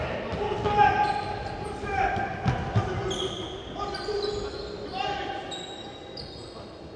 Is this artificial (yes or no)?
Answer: no